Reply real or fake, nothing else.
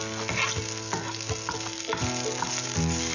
real